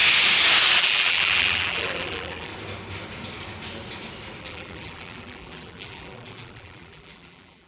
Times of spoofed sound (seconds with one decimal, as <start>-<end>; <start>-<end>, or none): 0.8-2.5; 4.4-7.7